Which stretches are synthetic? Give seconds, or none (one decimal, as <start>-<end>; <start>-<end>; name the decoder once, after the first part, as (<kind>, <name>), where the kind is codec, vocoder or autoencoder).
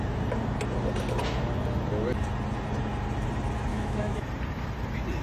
3.7-4.3 (autoencoder, DAC-VAE)